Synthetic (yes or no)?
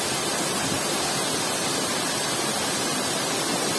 no